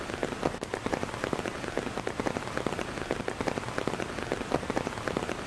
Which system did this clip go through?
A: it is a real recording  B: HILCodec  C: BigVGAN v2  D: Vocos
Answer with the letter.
A